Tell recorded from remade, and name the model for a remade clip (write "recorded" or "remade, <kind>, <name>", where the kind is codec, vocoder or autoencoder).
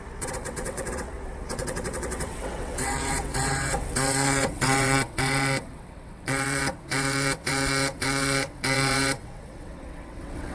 remade, vocoder, WaveNeXt